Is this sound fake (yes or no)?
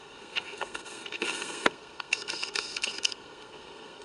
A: yes